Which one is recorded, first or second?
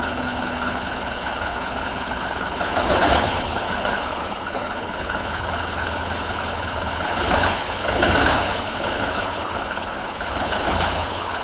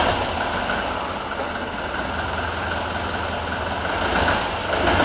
second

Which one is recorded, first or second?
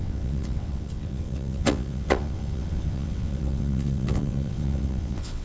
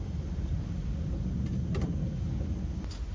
second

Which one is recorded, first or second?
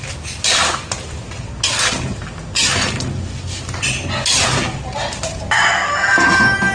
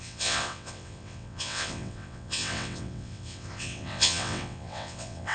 first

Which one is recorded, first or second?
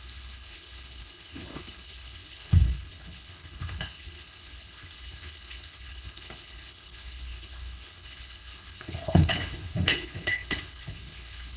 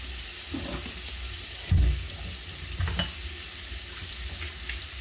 second